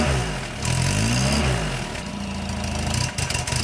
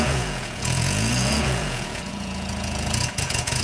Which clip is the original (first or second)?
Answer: first